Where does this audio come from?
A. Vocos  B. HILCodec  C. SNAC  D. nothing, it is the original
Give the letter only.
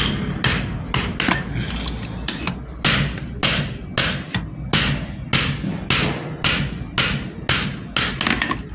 D